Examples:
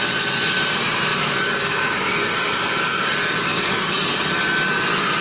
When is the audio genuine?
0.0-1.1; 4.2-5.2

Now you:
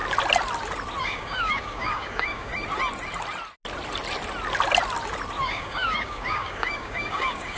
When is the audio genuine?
0.0-1.0; 2.5-5.4

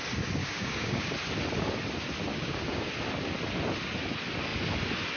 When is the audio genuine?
0.0-0.4; 1.1-2.3; 2.9-5.2

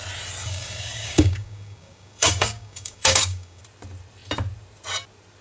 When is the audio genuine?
0.0-0.4; 3.6-5.4

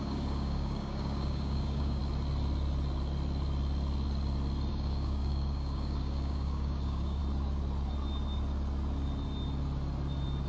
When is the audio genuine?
2.0-4.7; 7.2-10.5

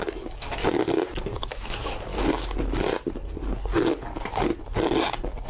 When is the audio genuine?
0.6-1.2; 2.1-4.0; 4.5-5.5